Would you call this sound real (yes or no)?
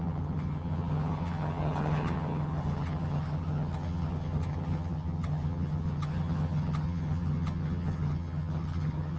no